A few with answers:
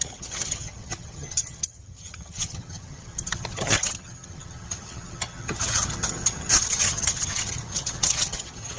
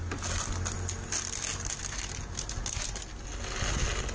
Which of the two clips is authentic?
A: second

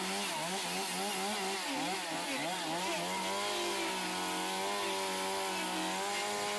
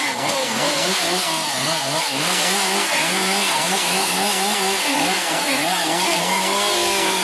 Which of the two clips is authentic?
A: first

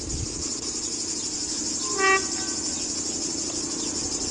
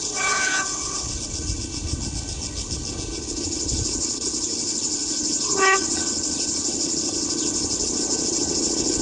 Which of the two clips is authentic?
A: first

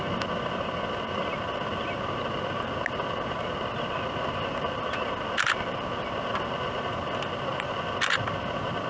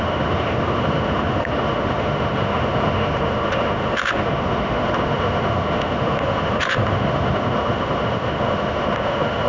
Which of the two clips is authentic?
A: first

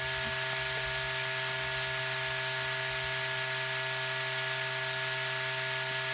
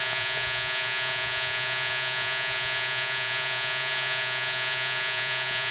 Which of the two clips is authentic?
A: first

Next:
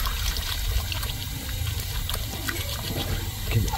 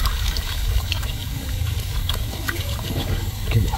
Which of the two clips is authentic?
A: first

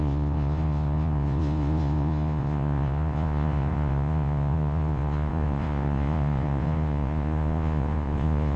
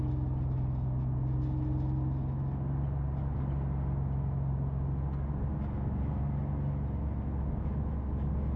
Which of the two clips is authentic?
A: second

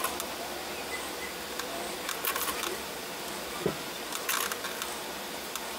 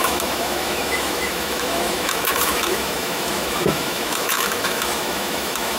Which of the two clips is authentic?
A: first